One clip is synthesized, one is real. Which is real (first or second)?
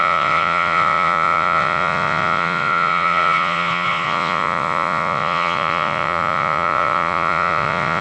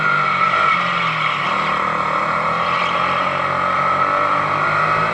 second